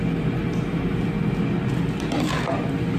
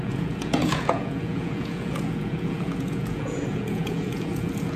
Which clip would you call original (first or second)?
first